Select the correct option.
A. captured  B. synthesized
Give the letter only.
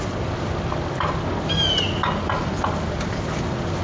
A